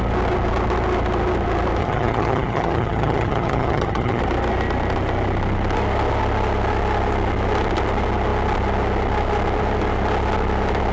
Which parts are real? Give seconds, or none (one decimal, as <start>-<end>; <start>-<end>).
0.0-1.8; 4.2-10.9